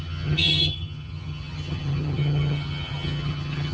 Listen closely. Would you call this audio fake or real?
fake